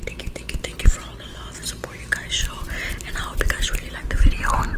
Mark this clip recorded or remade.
recorded